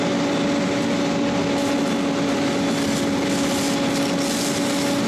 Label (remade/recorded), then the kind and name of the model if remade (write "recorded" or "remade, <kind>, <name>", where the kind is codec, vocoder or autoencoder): recorded